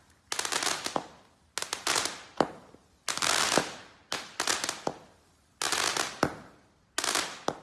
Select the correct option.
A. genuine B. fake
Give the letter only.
A